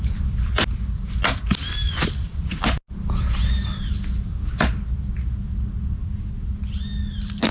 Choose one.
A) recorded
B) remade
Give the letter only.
A